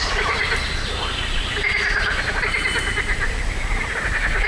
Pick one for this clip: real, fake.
real